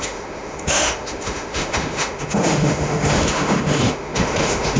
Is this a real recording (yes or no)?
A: no